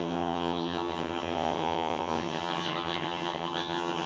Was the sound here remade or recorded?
remade